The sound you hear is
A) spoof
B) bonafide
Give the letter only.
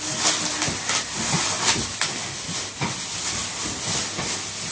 B